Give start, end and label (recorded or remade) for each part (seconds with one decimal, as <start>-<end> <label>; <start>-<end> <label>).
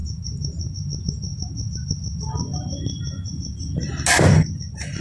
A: 0.0-0.6 remade; 0.6-5.0 recorded